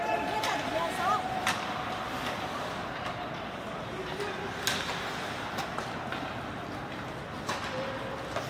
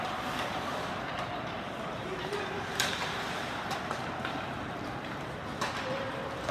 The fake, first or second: second